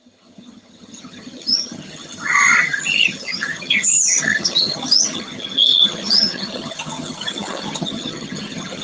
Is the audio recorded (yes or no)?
no